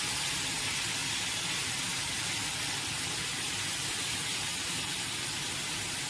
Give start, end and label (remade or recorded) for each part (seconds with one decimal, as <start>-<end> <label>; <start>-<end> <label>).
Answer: 0.0-1.0 recorded; 1.0-2.8 remade; 2.8-6.1 recorded